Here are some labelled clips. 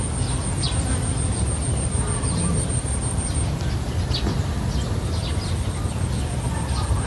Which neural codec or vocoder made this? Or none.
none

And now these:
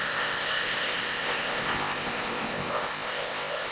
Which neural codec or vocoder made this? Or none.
codec, ZipCodec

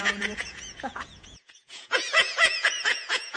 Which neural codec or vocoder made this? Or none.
vocoder, Vocos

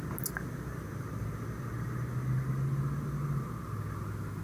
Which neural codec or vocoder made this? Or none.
none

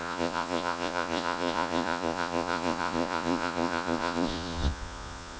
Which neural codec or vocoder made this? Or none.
vocoder, Vocos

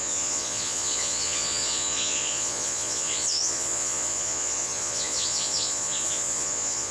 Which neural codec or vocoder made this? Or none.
vocoder, Vocos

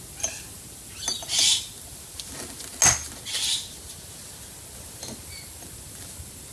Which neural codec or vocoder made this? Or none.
none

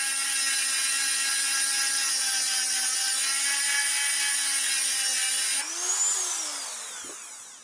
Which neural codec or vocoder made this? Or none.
none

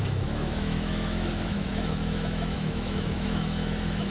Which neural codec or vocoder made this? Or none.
autoencoder, DAC-VAE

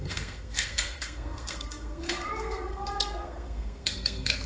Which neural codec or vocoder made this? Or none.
codec, SNAC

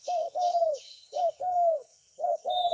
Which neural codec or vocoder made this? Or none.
codec, SNAC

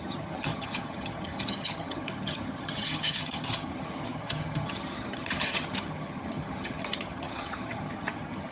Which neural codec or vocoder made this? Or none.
vocoder, HiFi-GAN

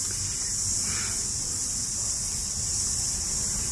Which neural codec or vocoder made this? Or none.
none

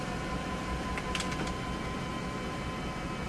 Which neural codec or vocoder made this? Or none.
none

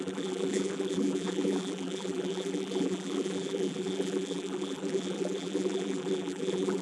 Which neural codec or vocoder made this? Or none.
vocoder, BigVGAN v2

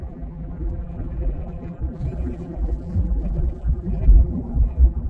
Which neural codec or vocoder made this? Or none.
vocoder, BigVGAN v2